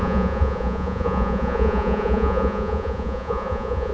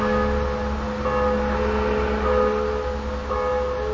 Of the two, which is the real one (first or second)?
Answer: second